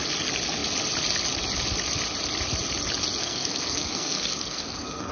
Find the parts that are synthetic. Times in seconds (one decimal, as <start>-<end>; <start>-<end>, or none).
3.2-5.1